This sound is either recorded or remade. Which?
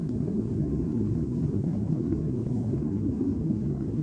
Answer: remade